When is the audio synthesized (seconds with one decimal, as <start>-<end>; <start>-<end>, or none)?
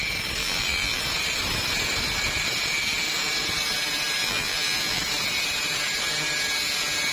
0.4-1.0; 4.2-5.0